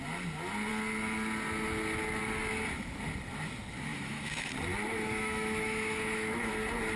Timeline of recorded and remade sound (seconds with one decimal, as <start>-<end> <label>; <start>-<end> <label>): 0.0-3.9 recorded; 3.9-4.5 remade; 4.5-4.9 recorded; 4.9-6.5 remade; 6.5-7.0 recorded